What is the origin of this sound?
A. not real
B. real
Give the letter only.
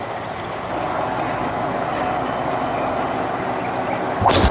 B